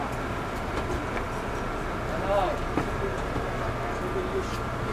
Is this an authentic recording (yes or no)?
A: yes